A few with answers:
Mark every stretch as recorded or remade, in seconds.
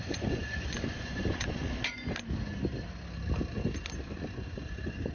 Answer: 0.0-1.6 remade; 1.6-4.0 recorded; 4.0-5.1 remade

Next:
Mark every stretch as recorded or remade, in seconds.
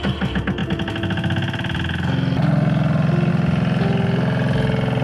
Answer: 0.0-5.0 recorded